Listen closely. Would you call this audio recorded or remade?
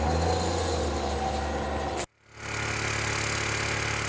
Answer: recorded